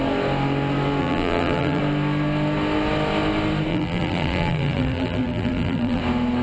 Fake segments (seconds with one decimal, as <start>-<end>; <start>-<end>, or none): 1.0-1.8; 3.7-6.0